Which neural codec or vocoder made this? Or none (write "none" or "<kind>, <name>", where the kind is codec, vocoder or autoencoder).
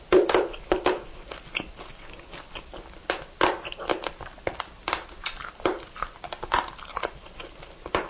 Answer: none